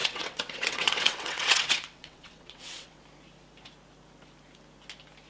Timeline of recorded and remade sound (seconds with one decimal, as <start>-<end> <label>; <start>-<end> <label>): 0.0-3.0 remade; 3.0-5.3 recorded